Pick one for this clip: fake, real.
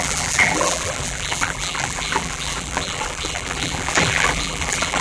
fake